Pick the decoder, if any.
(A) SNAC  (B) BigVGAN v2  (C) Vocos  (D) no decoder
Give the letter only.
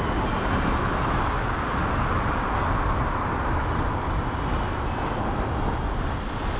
D